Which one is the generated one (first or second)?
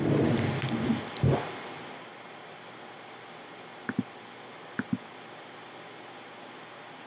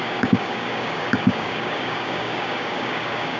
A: second